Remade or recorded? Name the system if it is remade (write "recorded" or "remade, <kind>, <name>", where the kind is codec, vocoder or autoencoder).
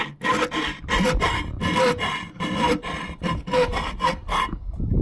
recorded